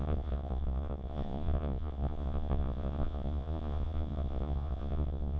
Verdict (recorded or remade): remade